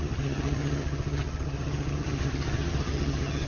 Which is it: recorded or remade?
remade